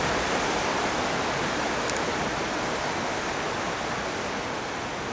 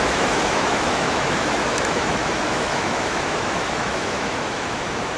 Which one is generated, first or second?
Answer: second